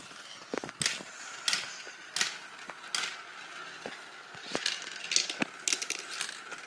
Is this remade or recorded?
recorded